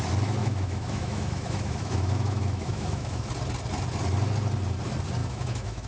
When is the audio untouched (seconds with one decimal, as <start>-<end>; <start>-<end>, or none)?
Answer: 0.0-0.4; 3.3-5.2